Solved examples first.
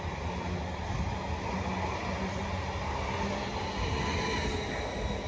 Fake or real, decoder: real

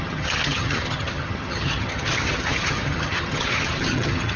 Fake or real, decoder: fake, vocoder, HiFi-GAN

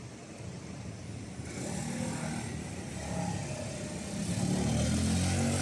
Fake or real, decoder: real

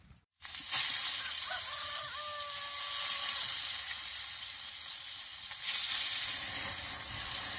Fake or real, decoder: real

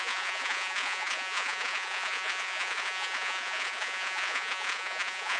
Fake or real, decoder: fake, vocoder, Vocos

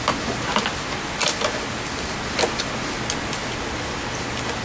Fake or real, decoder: real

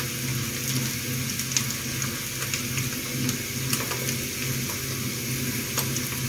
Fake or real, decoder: real